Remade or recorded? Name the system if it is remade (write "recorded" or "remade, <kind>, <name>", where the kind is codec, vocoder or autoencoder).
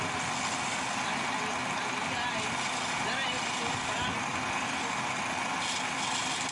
recorded